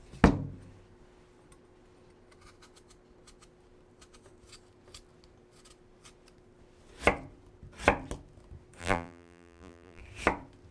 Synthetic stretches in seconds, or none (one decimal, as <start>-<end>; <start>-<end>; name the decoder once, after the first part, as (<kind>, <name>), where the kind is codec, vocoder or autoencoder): 8.8-10.0 (vocoder, BigVGAN v2)